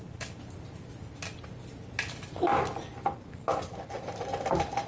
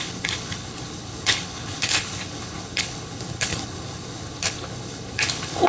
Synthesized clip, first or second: second